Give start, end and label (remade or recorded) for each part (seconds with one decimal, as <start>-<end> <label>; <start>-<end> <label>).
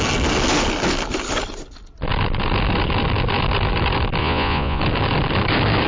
0.0-4.2 recorded; 4.2-4.8 remade; 4.8-5.9 recorded